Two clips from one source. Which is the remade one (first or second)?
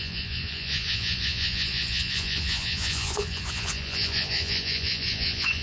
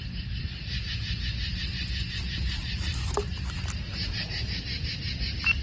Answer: first